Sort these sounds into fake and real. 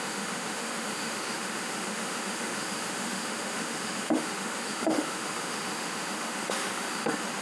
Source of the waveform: fake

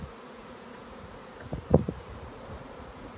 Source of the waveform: fake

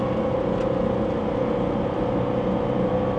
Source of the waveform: real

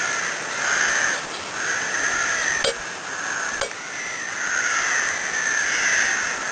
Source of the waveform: real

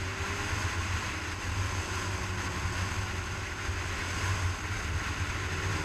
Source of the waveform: real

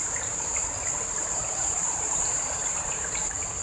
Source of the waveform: fake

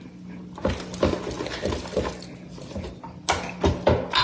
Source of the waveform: real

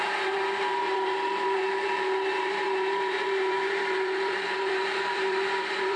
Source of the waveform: fake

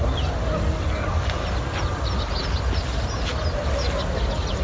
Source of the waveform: real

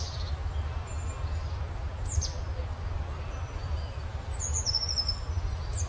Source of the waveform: real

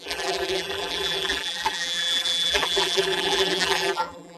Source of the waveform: fake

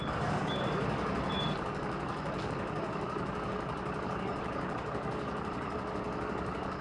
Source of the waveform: fake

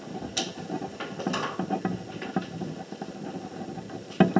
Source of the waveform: real